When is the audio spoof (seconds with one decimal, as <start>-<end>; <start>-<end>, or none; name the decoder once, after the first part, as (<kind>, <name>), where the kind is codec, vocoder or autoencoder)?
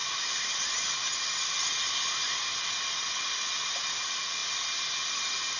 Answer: none